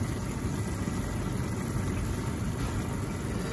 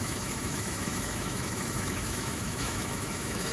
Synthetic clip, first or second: second